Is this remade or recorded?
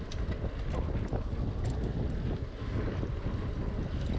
recorded